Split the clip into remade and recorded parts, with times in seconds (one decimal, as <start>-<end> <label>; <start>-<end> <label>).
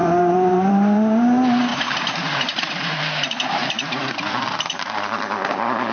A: 0.0-0.7 remade; 0.7-1.7 recorded; 1.7-5.2 remade; 5.2-5.9 recorded